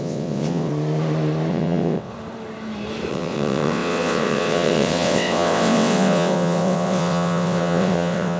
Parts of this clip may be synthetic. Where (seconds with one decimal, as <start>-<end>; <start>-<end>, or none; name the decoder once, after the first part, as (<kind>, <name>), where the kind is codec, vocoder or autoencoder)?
0.0-0.7 (vocoder, WaveNeXt); 1.5-2.1; 3.1-8.4